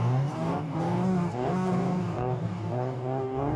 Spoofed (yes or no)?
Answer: yes